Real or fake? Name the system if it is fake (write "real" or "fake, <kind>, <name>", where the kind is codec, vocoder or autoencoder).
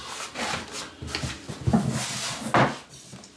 real